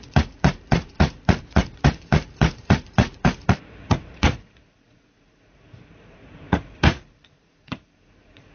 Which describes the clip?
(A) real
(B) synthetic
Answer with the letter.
B